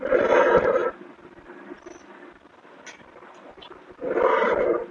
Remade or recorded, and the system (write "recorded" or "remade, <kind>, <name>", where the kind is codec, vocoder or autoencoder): recorded